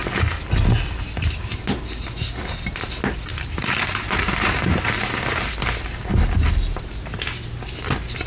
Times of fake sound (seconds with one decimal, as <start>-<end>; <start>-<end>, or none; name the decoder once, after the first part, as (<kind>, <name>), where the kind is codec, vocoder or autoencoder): 3.3-5.1 (vocoder, BigVGAN v2)